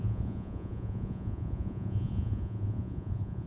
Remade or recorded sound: remade